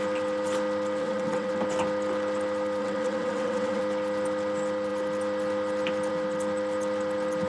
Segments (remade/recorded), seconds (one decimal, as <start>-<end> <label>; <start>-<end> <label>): 0.0-1.0 recorded; 1.0-1.5 remade; 1.5-2.8 recorded; 2.8-3.8 remade; 3.8-7.5 recorded